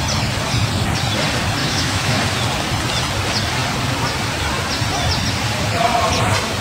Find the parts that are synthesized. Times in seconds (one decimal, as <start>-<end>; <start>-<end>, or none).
1.6-2.2